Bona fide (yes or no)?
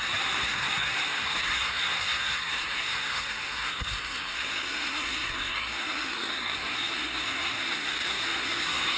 no